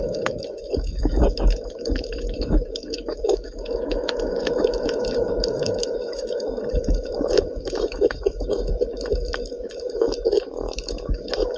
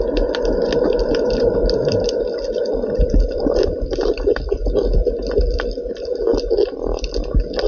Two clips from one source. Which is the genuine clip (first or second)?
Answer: second